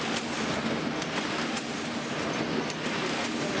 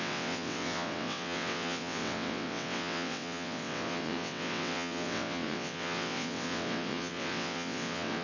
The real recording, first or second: first